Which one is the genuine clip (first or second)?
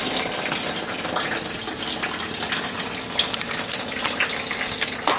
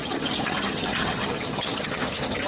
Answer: first